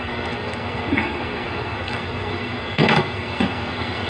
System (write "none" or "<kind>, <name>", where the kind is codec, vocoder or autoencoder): codec, SNAC